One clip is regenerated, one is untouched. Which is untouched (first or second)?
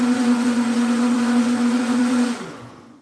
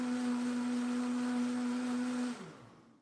second